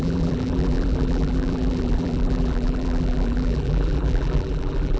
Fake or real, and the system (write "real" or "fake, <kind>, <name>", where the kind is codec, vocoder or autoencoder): fake, vocoder, BigVGAN v2